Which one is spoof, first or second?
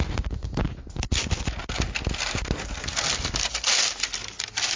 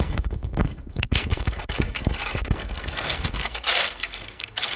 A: second